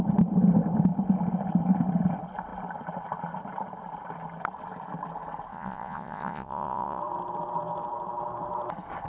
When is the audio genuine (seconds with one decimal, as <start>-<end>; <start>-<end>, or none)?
0.0-5.5; 7.0-9.1